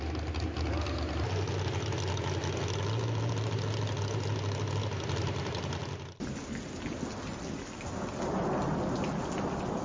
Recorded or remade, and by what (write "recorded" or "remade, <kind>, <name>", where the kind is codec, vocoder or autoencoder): recorded